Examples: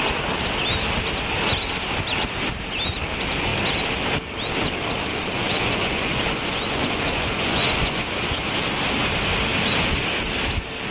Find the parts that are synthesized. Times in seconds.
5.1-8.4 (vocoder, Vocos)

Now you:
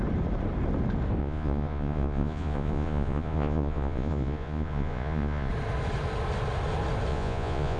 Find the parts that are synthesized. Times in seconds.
1.2-5.5 (vocoder, Vocos); 7.1-7.8

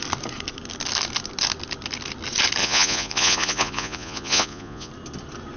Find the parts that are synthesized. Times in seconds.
2.6-4.9 (vocoder, Vocos)

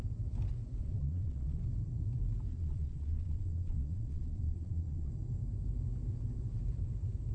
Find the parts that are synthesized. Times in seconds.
0.8-1.6 (vocoder, Vocos); 2.5-5.1

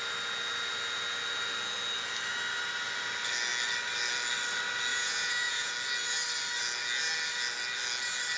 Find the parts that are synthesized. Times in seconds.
4.9-5.7 (vocoder, Vocos)